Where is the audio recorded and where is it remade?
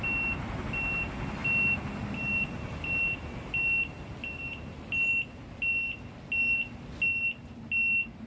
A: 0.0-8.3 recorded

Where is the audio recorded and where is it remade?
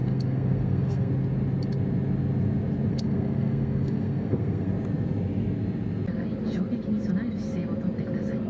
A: 0.0-1.1 remade; 1.1-2.9 recorded; 2.9-4.7 remade; 4.7-8.5 recorded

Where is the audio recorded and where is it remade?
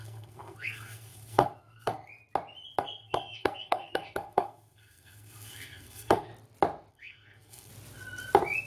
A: 0.0-2.1 remade; 2.1-2.8 recorded; 2.8-6.3 remade; 6.3-6.9 recorded; 6.9-7.7 remade; 7.7-8.7 recorded